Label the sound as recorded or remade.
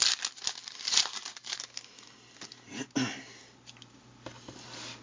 recorded